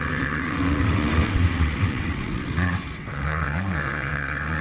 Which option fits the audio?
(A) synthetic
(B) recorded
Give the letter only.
A